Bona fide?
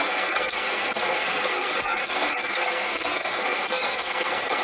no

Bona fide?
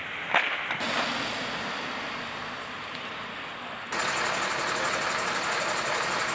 yes